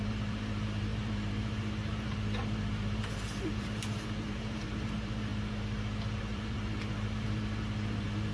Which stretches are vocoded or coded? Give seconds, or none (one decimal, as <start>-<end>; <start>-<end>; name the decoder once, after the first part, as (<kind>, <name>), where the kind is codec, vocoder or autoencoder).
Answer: 0.0-5.3 (vocoder, BigVGAN v2); 6.2-8.3

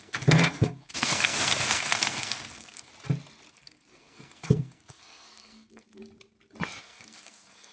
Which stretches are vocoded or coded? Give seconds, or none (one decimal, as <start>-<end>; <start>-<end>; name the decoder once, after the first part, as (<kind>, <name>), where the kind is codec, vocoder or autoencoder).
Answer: 0.0-2.9 (codec, SNAC); 3.5-6.0; 6.8-7.7

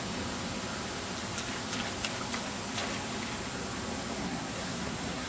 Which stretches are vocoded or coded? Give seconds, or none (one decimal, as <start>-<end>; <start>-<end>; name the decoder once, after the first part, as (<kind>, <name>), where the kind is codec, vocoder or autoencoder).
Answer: 4.2-5.3 (codec, SNAC)

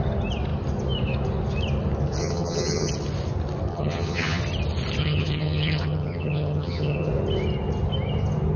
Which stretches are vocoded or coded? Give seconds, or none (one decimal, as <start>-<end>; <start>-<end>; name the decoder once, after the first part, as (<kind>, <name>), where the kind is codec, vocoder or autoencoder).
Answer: 2.2-2.9 (vocoder, HiFi-GAN); 3.7-4.4; 5.0-7.1

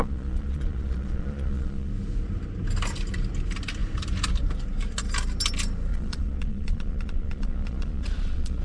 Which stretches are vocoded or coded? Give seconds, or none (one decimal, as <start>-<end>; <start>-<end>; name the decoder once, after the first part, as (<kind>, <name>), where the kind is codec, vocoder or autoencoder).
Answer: 0.0-1.9 (vocoder, Vocos); 5.9-8.6

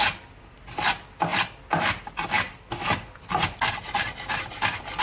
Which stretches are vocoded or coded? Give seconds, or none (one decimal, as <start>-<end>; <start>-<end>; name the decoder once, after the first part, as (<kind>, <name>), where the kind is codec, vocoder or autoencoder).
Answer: none

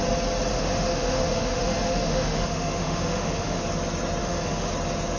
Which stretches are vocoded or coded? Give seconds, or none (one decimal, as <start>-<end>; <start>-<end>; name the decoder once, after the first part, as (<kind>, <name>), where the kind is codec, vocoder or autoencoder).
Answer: 0.5-3.6 (autoencoder, DAC-VAE); 4.2-4.7